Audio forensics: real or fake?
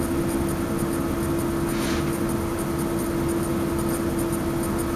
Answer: real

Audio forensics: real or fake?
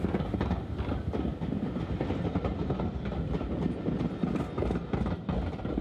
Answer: real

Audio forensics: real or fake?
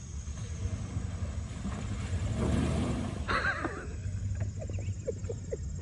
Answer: real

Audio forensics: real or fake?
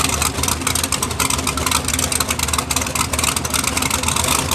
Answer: real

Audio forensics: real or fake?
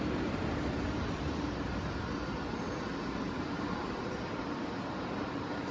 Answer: fake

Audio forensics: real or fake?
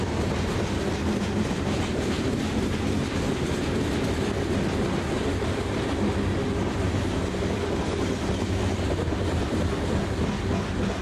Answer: real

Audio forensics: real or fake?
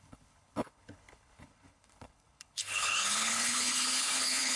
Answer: fake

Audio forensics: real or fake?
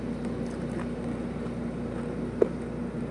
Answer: real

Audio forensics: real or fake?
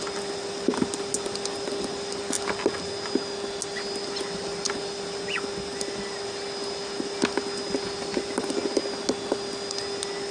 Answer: real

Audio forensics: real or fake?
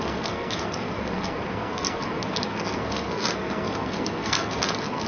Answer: fake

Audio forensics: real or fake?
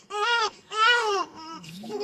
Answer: fake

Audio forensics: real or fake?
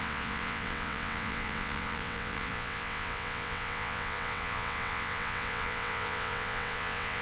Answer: fake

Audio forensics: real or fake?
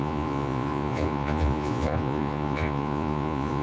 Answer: fake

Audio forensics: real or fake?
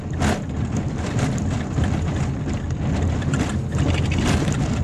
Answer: real